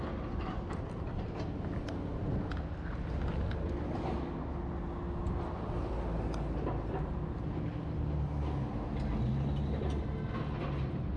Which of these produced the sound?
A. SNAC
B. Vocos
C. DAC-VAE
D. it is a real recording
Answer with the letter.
D